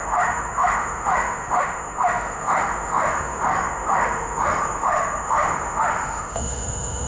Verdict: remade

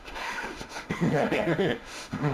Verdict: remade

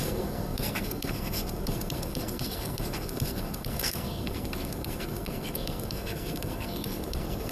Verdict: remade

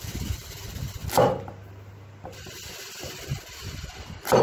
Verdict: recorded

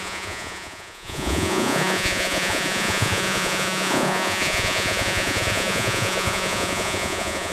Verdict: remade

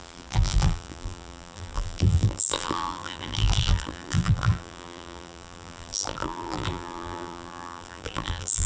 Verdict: remade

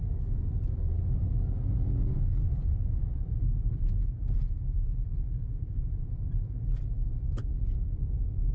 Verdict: remade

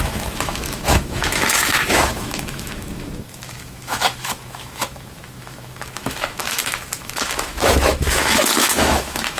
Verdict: remade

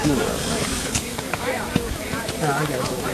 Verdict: remade